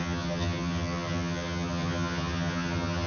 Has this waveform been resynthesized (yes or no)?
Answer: yes